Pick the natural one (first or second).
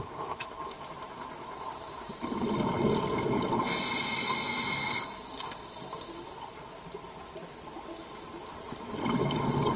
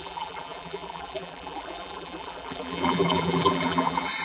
first